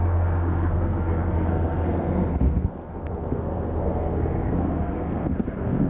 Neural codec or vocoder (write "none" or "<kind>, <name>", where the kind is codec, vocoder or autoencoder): codec, SNAC